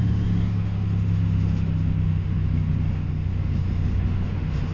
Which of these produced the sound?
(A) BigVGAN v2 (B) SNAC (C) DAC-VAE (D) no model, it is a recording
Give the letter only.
C